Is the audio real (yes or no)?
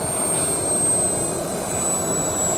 yes